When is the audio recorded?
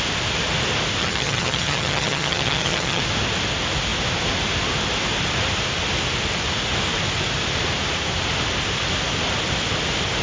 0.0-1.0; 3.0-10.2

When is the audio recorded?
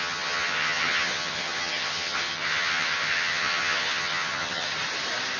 4.7-5.4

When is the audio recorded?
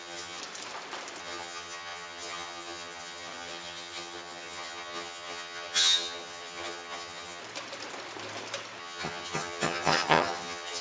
0.4-1.2; 7.4-8.8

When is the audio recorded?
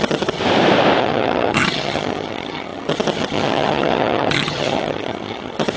0.4-1.0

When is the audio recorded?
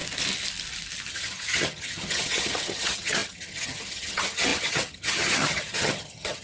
0.0-1.1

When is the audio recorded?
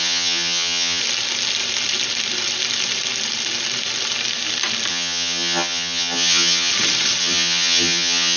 1.0-4.9; 6.7-7.2